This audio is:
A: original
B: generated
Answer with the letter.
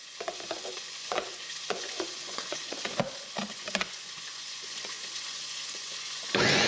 B